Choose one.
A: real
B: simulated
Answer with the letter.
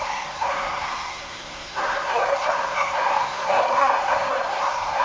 B